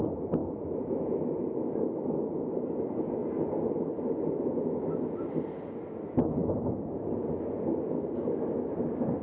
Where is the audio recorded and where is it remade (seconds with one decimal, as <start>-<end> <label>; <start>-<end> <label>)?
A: 0.0-9.2 recorded